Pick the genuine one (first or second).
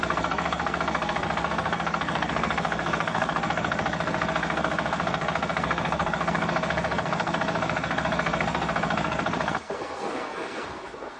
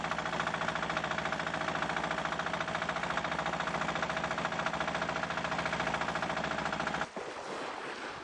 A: second